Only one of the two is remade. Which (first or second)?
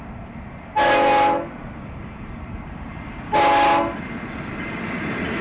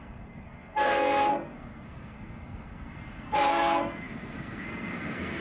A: second